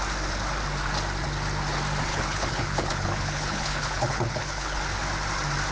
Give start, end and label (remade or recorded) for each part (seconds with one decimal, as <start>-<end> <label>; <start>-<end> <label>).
0.0-2.1 recorded; 2.1-4.8 remade; 4.8-5.7 recorded